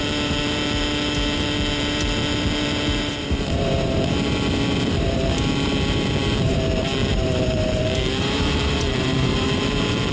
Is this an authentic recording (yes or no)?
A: no